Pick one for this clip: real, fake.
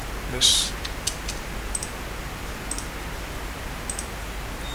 real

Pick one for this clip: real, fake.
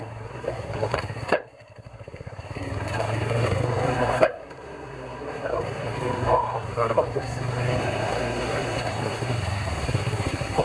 fake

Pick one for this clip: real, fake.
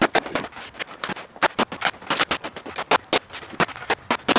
real